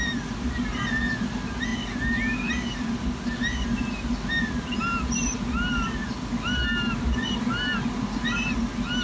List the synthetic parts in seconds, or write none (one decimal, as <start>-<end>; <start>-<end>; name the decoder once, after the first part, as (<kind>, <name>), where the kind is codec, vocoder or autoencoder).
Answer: none